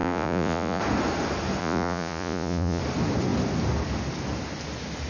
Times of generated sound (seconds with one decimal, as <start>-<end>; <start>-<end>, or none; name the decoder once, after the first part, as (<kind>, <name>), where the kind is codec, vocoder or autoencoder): 0.0-0.8 (vocoder, Vocos); 1.6-2.8